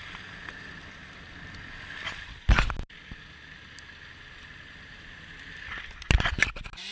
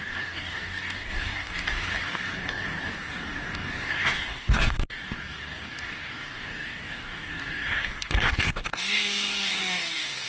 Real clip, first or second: first